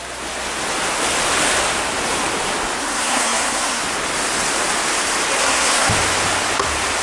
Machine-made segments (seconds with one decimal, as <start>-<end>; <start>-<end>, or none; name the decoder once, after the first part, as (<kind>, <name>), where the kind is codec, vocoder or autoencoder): 2.8-3.8 (codec, SNAC); 5.4-5.9